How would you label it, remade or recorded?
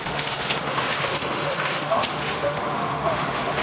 remade